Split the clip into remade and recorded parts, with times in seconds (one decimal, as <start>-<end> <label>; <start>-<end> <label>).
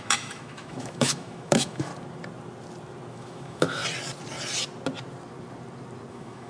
0.0-1.9 remade; 1.9-3.1 recorded; 3.1-3.8 remade; 3.8-6.1 recorded; 6.1-6.5 remade